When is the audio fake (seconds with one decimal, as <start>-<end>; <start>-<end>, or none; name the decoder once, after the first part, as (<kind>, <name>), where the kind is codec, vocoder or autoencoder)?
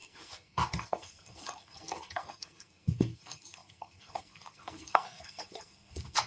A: 0.0-6.3 (codec, SNAC)